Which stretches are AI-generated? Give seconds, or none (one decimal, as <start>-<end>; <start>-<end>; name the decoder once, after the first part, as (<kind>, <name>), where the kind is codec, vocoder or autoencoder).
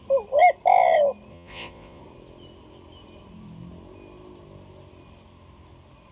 1.3-2.0 (vocoder, Vocos)